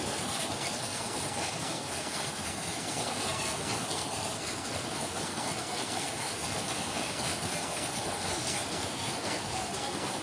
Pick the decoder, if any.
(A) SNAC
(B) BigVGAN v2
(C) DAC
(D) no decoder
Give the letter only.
A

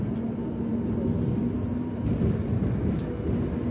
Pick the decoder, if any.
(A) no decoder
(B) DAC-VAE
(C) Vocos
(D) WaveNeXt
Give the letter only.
A